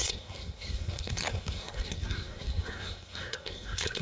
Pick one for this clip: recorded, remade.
remade